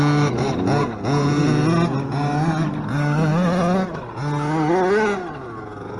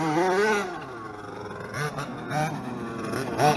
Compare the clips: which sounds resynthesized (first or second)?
second